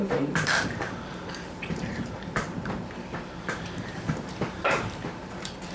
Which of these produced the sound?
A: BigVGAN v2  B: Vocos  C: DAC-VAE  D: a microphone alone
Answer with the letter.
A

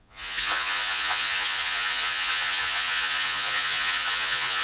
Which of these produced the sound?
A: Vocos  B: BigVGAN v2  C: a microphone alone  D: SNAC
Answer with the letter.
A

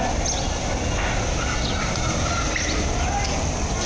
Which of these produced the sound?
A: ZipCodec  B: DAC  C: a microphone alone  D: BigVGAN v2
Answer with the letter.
C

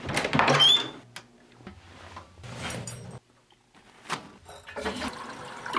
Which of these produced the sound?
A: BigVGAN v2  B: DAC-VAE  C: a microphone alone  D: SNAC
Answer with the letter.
C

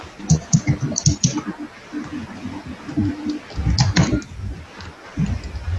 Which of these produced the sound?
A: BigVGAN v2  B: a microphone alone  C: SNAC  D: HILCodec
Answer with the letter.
B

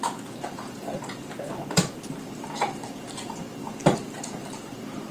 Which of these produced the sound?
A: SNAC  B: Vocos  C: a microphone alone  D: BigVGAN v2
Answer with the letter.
C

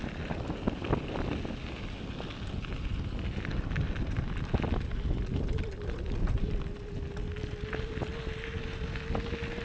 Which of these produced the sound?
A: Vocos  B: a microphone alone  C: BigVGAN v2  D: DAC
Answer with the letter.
B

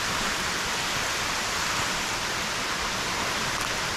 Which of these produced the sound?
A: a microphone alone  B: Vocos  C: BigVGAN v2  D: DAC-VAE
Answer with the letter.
A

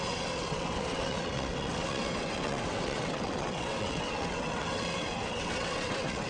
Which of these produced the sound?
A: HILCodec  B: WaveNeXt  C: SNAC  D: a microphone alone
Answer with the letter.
B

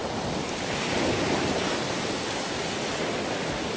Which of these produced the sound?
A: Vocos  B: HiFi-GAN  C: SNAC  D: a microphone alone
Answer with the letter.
D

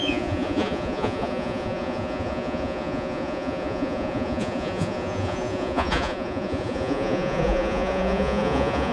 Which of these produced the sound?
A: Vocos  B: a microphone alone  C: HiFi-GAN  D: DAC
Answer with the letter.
A